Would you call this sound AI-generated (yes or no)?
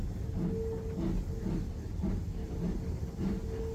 no